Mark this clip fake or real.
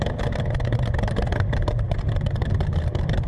real